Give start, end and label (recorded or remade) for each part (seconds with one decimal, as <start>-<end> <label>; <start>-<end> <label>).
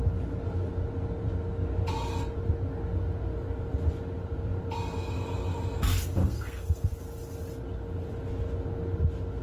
0.0-6.2 recorded; 6.2-7.0 remade; 7.0-9.4 recorded